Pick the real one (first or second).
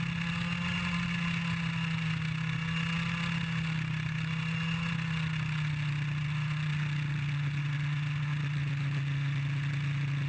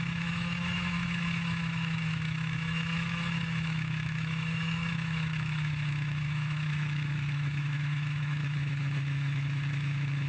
first